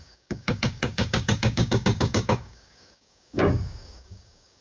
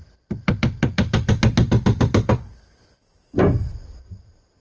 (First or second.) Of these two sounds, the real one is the second